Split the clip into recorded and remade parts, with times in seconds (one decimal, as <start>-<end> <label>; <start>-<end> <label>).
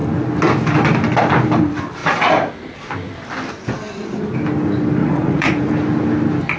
0.0-5.0 recorded; 5.0-5.7 remade; 5.7-6.6 recorded